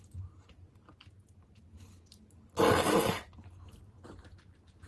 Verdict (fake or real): real